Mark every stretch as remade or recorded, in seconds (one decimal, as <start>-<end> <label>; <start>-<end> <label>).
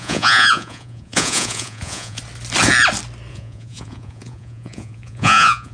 0.0-2.2 remade; 2.2-3.3 recorded; 3.3-5.7 remade